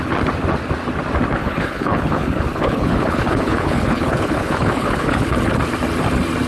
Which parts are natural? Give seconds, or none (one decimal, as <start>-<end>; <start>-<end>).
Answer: 0.0-1.4; 5.3-6.5